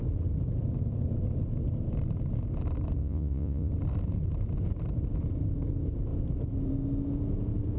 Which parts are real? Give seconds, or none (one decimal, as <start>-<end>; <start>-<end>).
0.0-3.0; 3.7-7.8